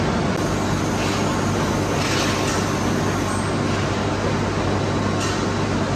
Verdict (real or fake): real